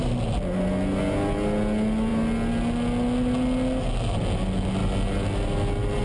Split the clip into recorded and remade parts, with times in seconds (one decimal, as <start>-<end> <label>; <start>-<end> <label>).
0.0-6.0 recorded